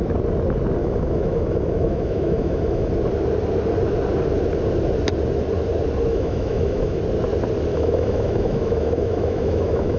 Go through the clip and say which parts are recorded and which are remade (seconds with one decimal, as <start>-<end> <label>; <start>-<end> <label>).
0.0-0.8 recorded; 0.8-2.9 remade; 2.9-6.1 recorded; 6.1-7.0 remade; 7.0-7.7 recorded; 7.7-10.0 remade

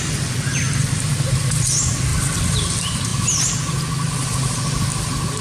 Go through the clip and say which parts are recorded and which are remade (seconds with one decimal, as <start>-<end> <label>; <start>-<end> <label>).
0.0-5.4 recorded

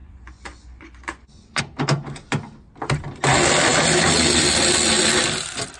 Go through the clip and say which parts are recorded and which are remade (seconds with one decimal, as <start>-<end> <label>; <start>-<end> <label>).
0.0-1.6 remade; 1.6-5.8 recorded

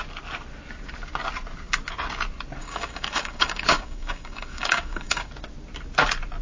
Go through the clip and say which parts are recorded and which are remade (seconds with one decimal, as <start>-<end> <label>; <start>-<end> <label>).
0.0-2.6 recorded; 2.6-5.3 remade; 5.3-6.4 recorded

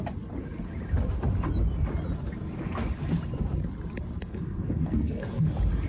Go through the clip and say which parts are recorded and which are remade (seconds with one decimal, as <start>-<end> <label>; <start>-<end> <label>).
0.0-4.2 recorded; 4.2-5.5 remade; 5.5-5.9 recorded